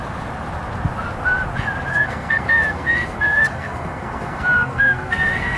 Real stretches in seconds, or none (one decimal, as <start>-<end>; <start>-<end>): 0.0-1.9